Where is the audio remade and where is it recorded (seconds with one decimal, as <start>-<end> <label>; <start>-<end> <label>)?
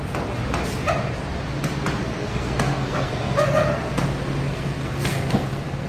0.0-2.0 recorded; 2.0-4.0 remade; 4.0-4.5 recorded; 4.5-5.9 remade